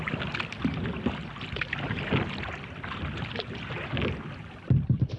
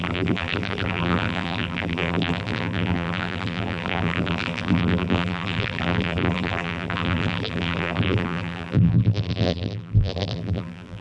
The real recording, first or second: first